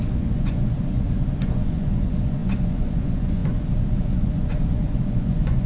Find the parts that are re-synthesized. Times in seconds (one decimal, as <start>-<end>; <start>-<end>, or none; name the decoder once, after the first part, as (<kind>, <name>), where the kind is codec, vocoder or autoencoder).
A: 0.0-5.7 (vocoder, Vocos)